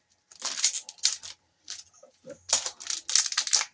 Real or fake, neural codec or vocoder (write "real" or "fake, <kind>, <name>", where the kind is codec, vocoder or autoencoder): real